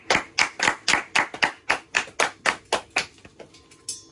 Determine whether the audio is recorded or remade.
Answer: recorded